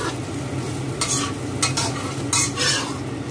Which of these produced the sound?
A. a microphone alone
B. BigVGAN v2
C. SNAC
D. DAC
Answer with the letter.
A